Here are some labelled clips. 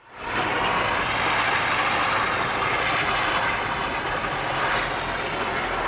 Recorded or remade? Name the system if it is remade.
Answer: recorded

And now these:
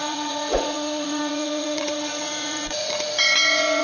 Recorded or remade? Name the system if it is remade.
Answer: remade, vocoder, Vocos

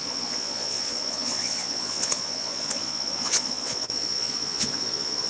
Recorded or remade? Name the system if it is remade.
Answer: remade, vocoder, Vocos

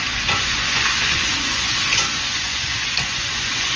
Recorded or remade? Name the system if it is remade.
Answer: remade, vocoder, Vocos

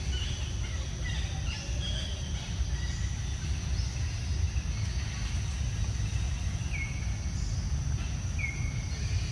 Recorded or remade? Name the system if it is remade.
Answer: recorded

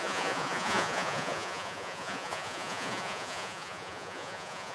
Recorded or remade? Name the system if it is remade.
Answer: remade, vocoder, Vocos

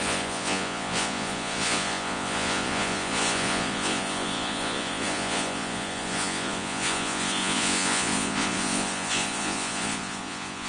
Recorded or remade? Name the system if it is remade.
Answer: remade, vocoder, Vocos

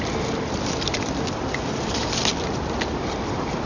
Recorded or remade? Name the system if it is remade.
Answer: recorded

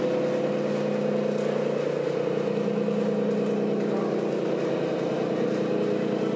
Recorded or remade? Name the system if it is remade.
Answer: recorded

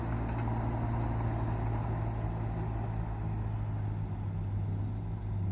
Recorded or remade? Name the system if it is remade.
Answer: recorded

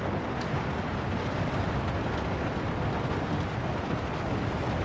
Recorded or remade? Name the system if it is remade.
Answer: recorded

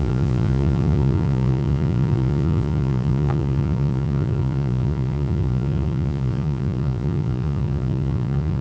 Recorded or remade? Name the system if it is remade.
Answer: remade, vocoder, Vocos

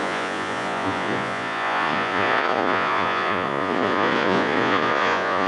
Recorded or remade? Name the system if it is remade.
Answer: remade, vocoder, Vocos